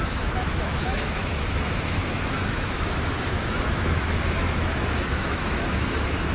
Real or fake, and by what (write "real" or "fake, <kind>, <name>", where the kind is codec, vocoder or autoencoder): fake, autoencoder, DAC-VAE